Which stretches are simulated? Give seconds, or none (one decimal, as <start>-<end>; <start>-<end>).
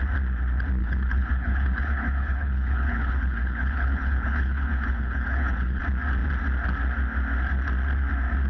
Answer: 0.8-5.8